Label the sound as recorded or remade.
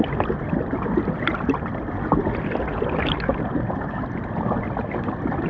recorded